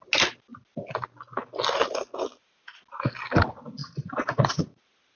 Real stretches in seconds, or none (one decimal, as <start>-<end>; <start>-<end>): 0.0-3.8; 4.8-5.2